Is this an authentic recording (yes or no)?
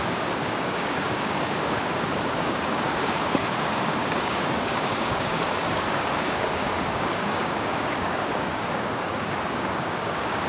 no